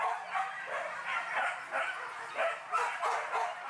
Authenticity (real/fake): real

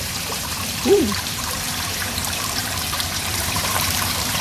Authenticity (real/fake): fake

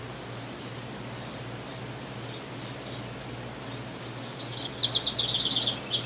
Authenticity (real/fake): real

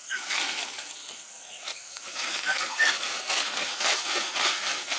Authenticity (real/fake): fake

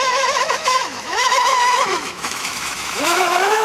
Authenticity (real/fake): fake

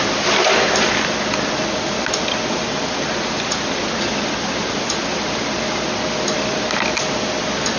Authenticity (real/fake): real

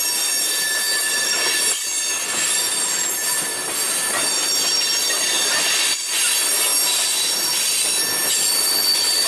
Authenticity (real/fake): real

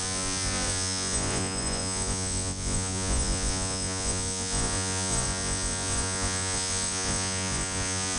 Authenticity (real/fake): fake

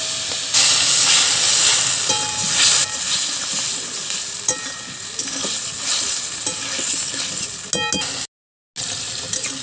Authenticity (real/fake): real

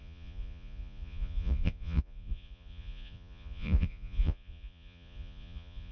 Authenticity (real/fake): fake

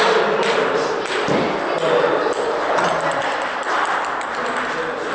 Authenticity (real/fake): real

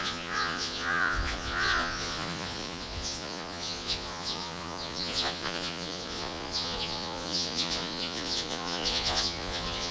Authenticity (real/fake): fake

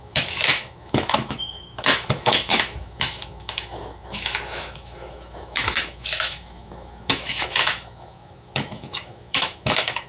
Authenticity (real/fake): fake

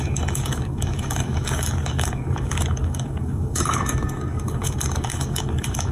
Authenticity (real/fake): fake